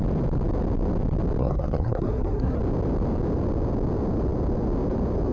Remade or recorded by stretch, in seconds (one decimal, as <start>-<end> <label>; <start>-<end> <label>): 0.0-1.4 recorded; 1.4-2.6 remade; 2.6-5.3 recorded